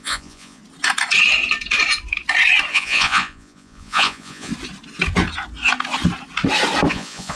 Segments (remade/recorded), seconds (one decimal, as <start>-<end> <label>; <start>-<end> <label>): 0.0-0.6 remade; 0.6-2.7 recorded; 2.7-4.5 remade; 4.5-6.9 recorded; 6.9-7.4 remade